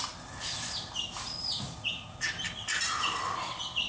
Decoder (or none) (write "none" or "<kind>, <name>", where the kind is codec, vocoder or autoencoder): none